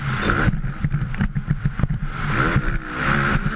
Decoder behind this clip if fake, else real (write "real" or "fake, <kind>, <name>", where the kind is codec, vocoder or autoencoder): real